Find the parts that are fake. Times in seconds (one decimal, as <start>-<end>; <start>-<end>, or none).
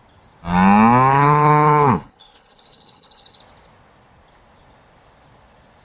1.1-3.4